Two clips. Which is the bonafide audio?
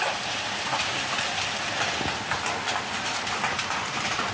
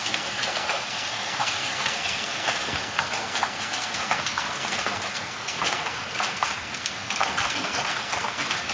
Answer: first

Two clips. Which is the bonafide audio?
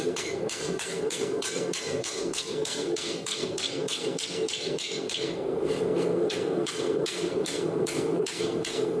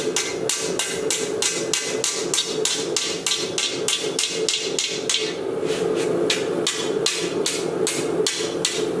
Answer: second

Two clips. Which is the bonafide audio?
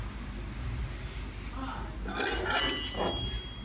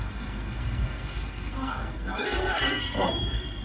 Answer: first